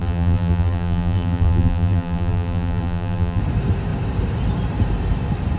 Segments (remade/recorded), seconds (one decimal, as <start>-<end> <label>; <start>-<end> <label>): 0.0-3.4 remade; 3.4-5.6 recorded